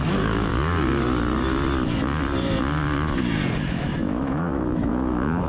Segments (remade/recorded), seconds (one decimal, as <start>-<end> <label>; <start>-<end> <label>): 0.0-0.5 remade; 0.5-3.6 recorded; 3.6-5.5 remade